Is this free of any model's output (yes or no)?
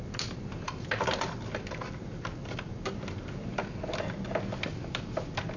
yes